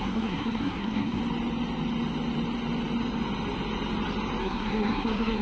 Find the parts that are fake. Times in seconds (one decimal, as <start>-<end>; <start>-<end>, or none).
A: 0.0-1.2; 4.4-5.4